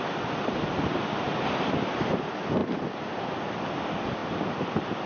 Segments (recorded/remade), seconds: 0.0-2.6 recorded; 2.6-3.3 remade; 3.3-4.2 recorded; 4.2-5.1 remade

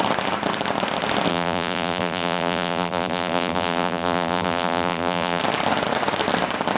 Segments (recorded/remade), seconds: 0.0-1.3 recorded; 1.3-5.4 remade; 5.4-6.8 recorded

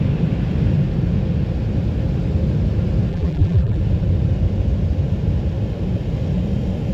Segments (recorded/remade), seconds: 0.0-3.1 recorded; 3.1-3.8 remade; 3.8-6.9 recorded

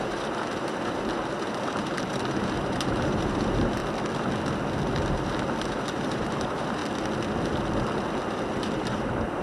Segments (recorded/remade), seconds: 0.0-3.8 remade; 3.8-5.7 recorded; 5.7-6.8 remade; 6.8-8.5 recorded; 8.5-9.4 remade

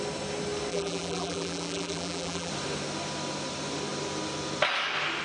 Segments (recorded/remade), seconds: 0.0-0.7 recorded; 0.7-2.5 remade; 2.5-5.2 recorded